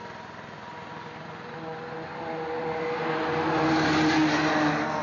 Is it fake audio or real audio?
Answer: real